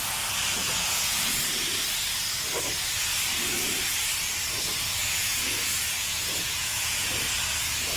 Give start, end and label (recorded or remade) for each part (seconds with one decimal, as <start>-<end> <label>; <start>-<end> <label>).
0.0-0.6 recorded; 0.6-1.4 remade; 1.4-5.0 recorded; 5.0-7.1 remade; 7.1-8.0 recorded